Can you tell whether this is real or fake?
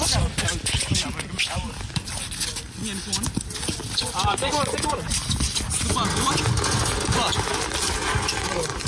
real